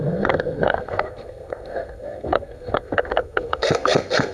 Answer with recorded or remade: remade